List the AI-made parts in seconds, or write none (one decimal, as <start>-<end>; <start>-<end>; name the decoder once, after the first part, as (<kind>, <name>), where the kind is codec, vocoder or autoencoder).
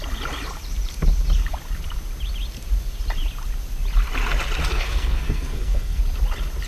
4.7-6.0 (codec, SNAC)